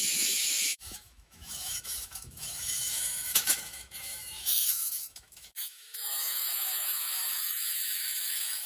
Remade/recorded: remade